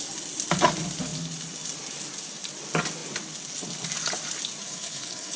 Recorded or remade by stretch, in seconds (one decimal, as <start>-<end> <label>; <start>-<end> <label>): 0.0-4.6 recorded; 4.6-5.4 remade